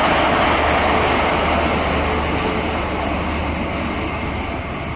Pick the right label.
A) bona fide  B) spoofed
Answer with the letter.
A